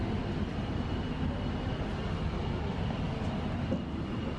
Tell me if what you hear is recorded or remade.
recorded